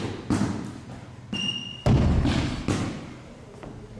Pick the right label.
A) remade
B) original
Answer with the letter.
B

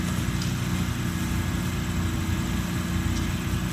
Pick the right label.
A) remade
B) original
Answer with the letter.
B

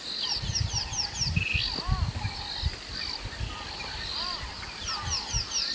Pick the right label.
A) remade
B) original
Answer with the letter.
B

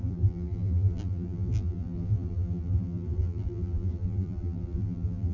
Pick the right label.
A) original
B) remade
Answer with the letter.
B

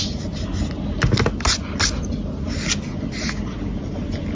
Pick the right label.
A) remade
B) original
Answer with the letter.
B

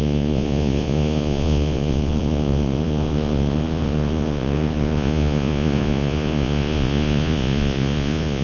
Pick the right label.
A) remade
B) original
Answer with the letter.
A